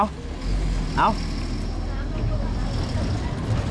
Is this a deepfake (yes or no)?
no